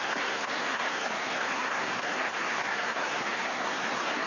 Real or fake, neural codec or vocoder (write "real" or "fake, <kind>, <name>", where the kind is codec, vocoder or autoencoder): fake, codec, SNAC